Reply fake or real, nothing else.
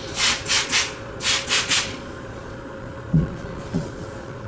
fake